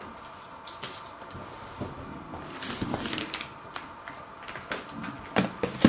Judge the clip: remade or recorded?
recorded